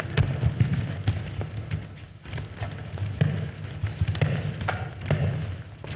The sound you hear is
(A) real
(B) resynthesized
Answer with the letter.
A